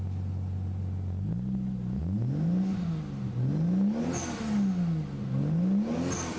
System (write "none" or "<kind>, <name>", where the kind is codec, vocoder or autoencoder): none